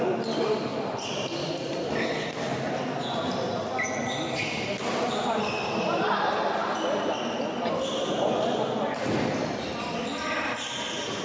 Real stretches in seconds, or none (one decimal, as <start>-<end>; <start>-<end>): 0.0-0.7; 1.9-2.5; 3.2-11.2

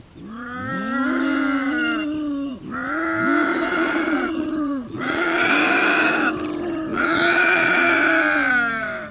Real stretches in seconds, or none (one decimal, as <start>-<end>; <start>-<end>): 0.0-3.5; 5.5-6.9; 7.9-9.1

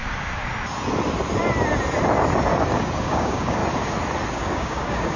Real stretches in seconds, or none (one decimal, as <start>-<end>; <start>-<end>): 0.0-3.0; 3.6-4.3

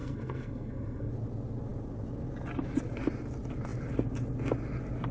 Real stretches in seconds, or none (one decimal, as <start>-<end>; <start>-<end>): 1.1-5.1

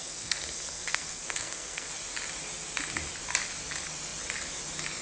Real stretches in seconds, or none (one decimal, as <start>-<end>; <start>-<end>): 1.9-5.0